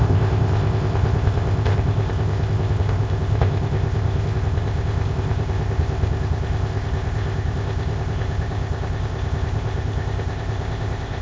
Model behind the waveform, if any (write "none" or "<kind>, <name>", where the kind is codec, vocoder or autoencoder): codec, ZipCodec